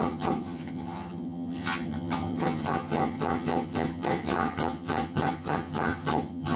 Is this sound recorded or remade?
remade